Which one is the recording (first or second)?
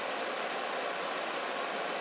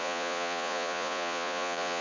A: first